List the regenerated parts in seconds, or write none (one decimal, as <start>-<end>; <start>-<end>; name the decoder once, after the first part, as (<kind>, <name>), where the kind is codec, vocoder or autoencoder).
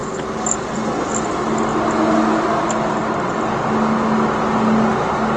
none